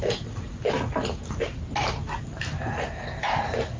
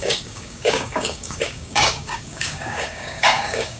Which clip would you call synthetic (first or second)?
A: second